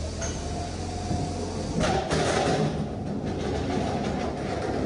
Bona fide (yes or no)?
yes